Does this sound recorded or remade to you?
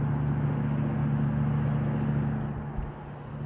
recorded